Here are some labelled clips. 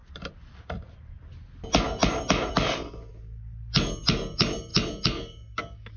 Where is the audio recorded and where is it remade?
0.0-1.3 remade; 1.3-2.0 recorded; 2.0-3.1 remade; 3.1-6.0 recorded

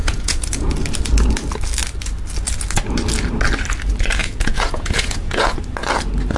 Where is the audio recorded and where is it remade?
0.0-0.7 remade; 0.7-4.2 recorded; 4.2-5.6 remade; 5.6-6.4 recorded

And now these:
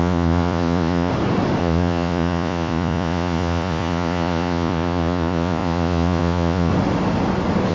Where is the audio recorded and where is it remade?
0.0-1.1 remade; 1.1-1.6 recorded; 1.6-6.7 remade; 6.7-7.7 recorded

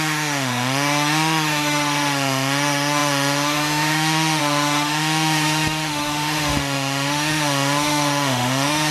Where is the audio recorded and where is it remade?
0.0-8.9 remade